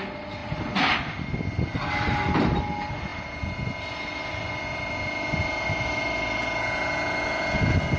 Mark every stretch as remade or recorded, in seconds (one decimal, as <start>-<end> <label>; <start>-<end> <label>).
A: 0.0-8.0 recorded